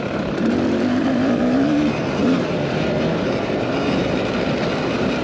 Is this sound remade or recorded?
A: remade